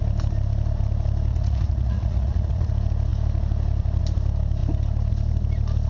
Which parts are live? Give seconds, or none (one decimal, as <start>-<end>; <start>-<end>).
0.0-1.3; 2.7-5.9